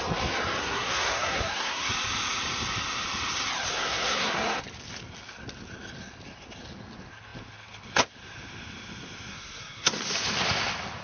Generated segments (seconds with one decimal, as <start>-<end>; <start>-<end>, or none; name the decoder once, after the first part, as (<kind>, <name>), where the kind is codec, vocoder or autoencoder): 0.6-1.9 (codec, SNAC); 3.7-4.6; 9.3-10.0